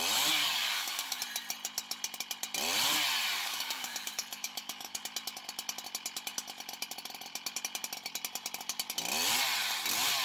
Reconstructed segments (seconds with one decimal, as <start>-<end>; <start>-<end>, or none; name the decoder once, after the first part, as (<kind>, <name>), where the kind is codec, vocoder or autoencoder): 0.4-1.2 (codec, DAC); 3.4-5.0